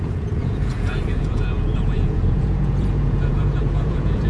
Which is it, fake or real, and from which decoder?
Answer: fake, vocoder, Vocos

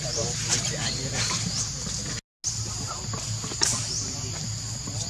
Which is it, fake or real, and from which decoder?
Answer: real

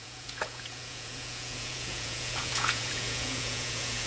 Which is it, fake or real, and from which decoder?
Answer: fake, vocoder, Vocos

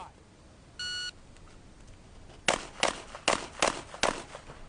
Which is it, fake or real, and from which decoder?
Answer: real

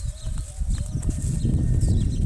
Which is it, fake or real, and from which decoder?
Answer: real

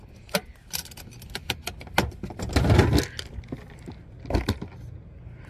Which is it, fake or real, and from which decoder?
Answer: real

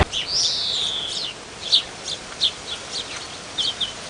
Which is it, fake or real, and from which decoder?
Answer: real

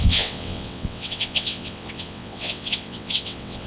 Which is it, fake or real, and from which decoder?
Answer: fake, vocoder, WaveNeXt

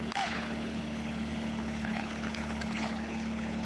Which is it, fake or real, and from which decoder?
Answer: fake, codec, HILCodec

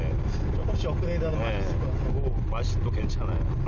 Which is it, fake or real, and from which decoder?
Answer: real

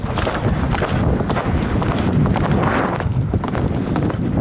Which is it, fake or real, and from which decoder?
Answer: fake, vocoder, BigVGAN v2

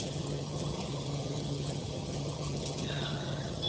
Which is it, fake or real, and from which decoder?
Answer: fake, vocoder, HiFi-GAN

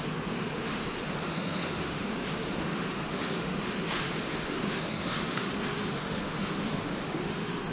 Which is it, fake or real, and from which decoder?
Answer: fake, autoencoder, DAC-VAE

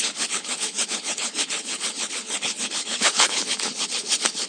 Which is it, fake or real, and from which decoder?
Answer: fake, codec, HILCodec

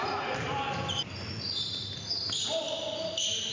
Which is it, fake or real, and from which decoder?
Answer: real